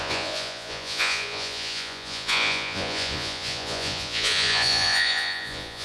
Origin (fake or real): fake